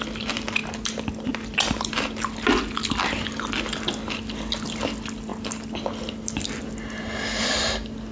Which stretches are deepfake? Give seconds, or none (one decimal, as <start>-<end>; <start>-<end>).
none

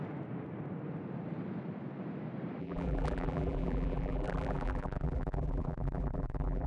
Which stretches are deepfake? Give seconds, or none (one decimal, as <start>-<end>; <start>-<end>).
2.6-6.7

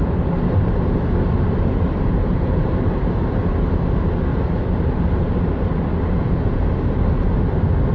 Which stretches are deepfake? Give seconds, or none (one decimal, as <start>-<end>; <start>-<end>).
1.7-2.7; 4.3-5.7